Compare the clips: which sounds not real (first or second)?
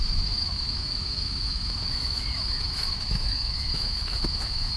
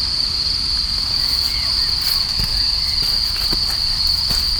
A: first